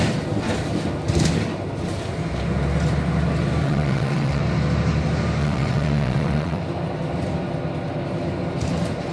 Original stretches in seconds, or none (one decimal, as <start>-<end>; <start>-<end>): 0.0-3.6; 4.4-5.4; 6.6-9.1

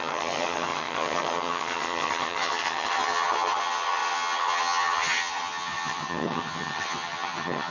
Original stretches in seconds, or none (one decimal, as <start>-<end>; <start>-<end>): none

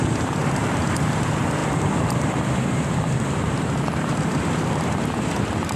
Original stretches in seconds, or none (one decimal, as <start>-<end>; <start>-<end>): none

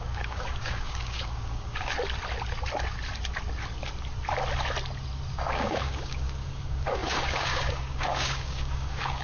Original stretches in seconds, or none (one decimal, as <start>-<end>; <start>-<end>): 1.9-5.3

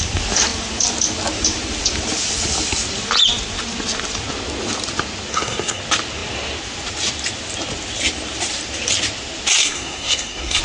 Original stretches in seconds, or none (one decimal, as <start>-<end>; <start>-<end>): 0.0-5.3; 5.8-9.6